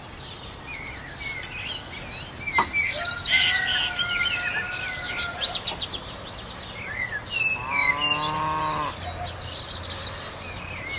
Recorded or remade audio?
recorded